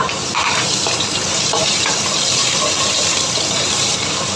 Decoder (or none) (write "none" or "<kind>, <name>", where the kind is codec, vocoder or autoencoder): vocoder, BigVGAN v2